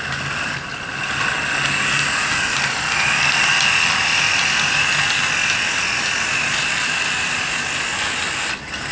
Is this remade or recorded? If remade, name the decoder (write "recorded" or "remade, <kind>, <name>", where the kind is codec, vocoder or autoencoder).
recorded